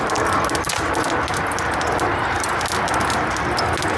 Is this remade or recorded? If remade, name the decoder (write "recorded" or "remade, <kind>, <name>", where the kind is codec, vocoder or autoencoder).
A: recorded